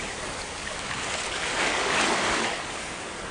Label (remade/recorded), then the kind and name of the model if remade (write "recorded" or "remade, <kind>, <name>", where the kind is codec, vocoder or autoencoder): remade, codec, DAC